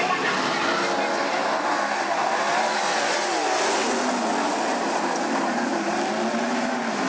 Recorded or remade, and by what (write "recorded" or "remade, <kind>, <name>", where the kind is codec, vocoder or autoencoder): recorded